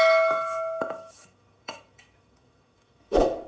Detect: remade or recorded remade